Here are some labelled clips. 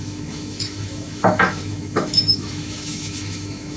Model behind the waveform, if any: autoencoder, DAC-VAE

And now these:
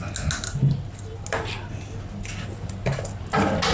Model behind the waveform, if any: none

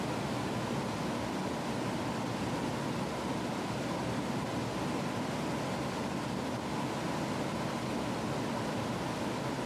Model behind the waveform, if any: none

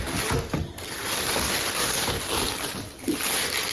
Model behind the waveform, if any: none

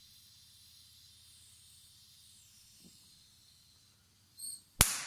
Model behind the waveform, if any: none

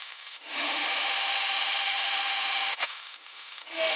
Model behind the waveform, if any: autoencoder, DAC-VAE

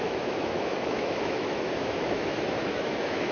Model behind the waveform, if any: autoencoder, DAC-VAE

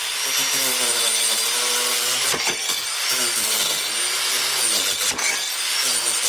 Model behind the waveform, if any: none